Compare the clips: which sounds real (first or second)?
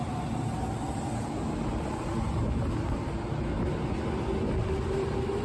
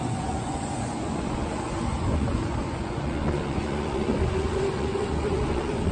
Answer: first